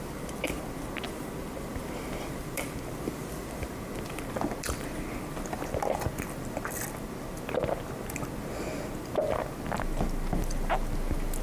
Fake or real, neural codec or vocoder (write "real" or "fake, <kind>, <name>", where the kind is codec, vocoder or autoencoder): real